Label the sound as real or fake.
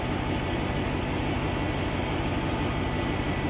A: real